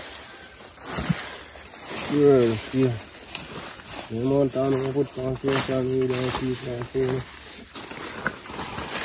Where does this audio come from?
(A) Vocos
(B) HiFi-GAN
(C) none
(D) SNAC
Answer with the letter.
C